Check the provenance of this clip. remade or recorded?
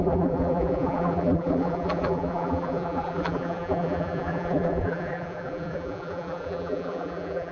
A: remade